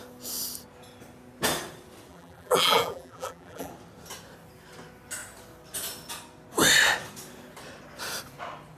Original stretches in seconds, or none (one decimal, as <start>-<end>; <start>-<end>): 0.0-2.1; 3.7-8.8